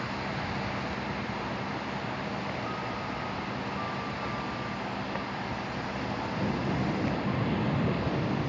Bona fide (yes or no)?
yes